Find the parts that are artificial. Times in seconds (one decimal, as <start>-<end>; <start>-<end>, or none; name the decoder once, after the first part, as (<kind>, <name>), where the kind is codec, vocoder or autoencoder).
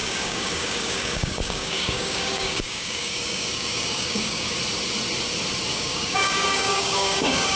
0.0-4.6 (codec, DAC); 5.7-7.6